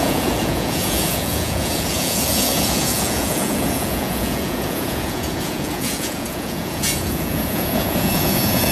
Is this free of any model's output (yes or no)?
no